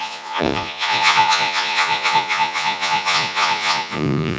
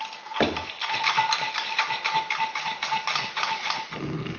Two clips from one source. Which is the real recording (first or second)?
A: second